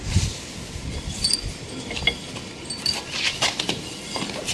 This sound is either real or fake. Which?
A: real